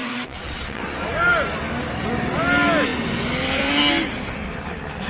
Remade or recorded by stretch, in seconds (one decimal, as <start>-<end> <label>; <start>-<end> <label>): 0.0-0.8 remade; 0.8-5.1 recorded